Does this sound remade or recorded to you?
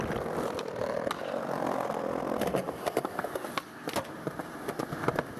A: recorded